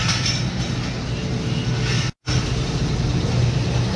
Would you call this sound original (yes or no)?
yes